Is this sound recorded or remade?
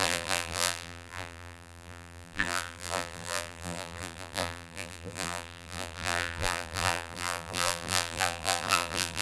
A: remade